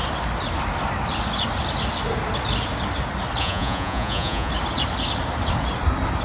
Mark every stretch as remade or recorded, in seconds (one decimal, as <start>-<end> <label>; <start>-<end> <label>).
0.0-3.4 recorded; 3.4-4.5 remade; 4.5-6.2 recorded